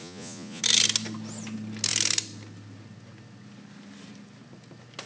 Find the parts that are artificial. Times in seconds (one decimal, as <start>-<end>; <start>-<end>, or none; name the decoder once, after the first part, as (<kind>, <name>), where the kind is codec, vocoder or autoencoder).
0.0-0.6 (vocoder, Vocos)